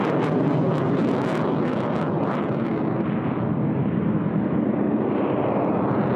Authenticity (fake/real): real